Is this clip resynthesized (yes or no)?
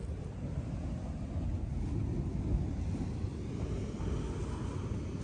no